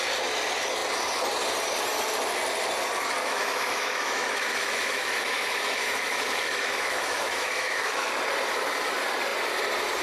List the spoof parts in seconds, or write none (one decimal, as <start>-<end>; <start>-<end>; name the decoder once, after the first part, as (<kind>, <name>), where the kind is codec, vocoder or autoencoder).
3.2-8.1 (autoencoder, DAC-VAE)